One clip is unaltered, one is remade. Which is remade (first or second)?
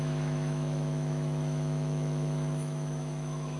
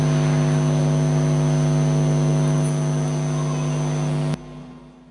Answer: first